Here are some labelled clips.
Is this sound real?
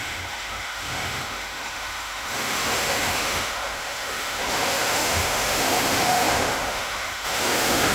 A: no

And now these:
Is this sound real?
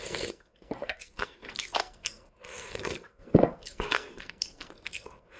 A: no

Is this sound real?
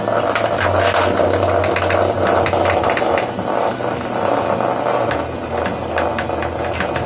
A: yes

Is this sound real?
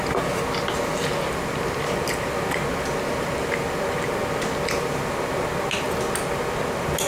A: yes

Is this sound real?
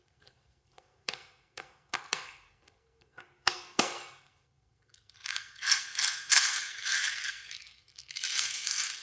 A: no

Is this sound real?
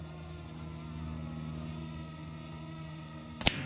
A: yes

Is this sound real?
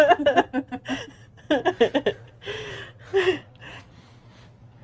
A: yes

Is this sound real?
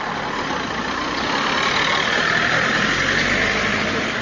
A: yes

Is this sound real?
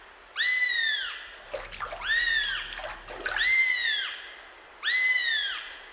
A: yes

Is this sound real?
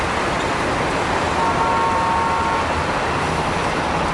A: yes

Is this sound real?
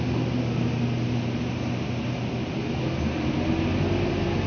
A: yes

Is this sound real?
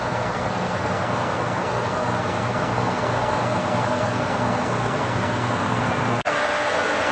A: no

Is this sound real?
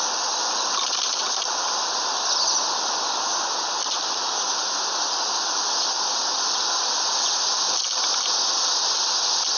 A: yes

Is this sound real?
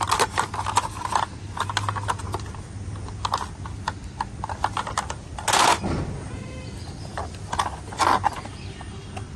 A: yes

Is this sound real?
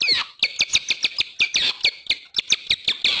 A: yes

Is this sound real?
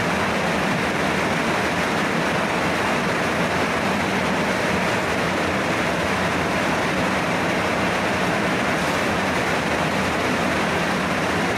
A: no